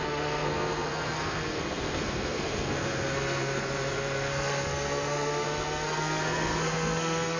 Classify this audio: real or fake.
fake